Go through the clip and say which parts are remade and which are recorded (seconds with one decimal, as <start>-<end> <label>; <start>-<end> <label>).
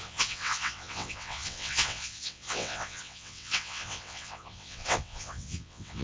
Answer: 0.0-6.0 remade